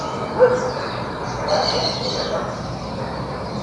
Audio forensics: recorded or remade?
recorded